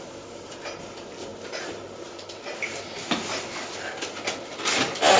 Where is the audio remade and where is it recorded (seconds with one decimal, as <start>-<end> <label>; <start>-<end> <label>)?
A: 0.0-5.2 recorded